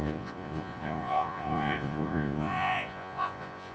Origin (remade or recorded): remade